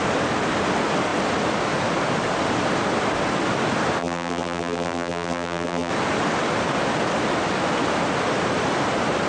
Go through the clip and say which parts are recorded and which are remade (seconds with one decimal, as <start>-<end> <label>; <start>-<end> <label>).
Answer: 0.0-4.0 recorded; 4.0-5.9 remade; 5.9-9.3 recorded